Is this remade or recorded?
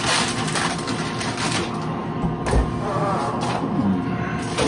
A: recorded